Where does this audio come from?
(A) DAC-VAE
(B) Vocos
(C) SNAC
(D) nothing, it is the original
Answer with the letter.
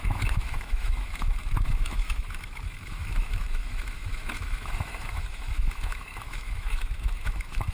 A